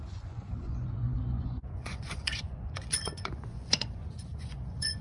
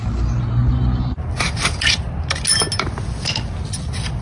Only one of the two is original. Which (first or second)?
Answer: second